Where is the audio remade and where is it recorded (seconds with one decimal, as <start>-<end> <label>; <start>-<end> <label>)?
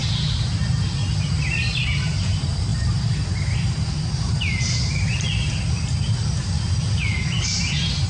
0.0-8.1 recorded